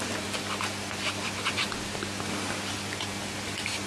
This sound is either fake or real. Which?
real